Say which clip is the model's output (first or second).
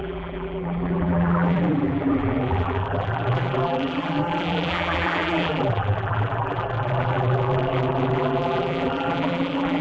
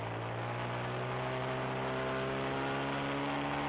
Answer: first